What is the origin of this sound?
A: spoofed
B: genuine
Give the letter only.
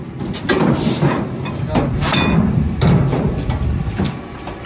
B